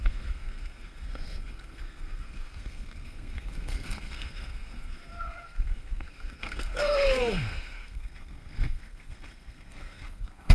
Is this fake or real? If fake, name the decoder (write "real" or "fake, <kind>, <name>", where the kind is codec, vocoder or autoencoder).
fake, codec, SNAC